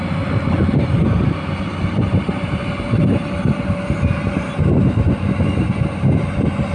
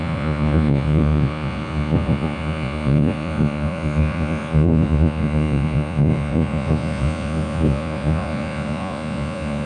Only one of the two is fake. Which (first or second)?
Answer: second